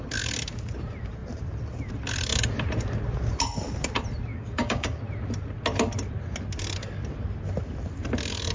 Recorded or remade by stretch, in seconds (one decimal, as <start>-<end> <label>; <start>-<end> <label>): 0.0-4.3 recorded; 4.3-5.0 remade; 5.0-8.5 recorded